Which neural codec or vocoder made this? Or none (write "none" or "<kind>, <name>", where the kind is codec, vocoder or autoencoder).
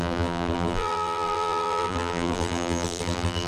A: vocoder, BigVGAN v2